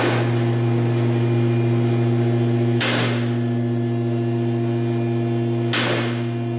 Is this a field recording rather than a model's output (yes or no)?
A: yes